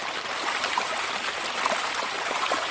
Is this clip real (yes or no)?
yes